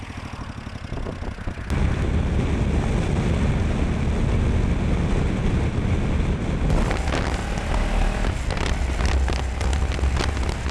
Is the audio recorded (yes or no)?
yes